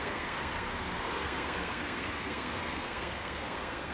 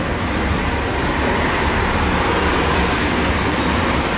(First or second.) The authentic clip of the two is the second